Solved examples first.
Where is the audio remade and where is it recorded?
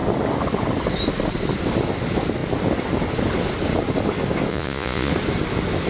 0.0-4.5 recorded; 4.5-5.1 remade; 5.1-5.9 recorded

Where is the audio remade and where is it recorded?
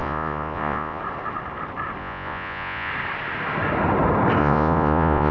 0.0-1.0 remade; 1.0-2.0 recorded; 2.0-2.9 remade; 2.9-4.4 recorded; 4.4-5.3 remade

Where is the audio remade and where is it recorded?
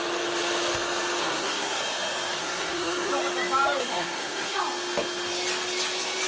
0.0-1.2 recorded; 1.2-1.8 remade; 1.8-2.4 recorded; 2.4-3.1 remade; 3.1-3.8 recorded; 3.8-4.6 remade; 4.6-6.3 recorded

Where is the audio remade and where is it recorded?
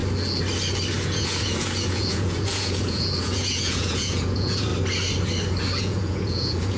0.0-1.0 recorded; 1.0-4.7 remade; 4.7-5.8 recorded; 5.8-6.8 remade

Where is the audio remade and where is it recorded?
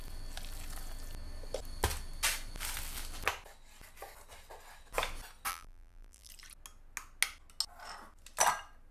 0.0-5.5 recorded; 5.5-6.3 remade; 6.3-8.9 recorded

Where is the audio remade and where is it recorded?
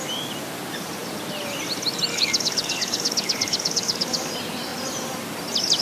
0.0-2.1 recorded; 2.1-4.3 remade; 4.3-5.8 recorded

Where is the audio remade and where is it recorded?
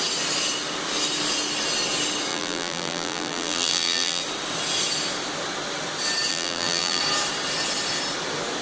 0.0-2.3 recorded; 2.3-4.2 remade; 4.2-6.3 recorded; 6.3-7.0 remade; 7.0-8.6 recorded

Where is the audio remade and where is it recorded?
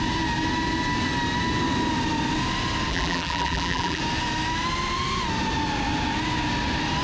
0.0-2.9 recorded; 2.9-4.0 remade; 4.0-7.0 recorded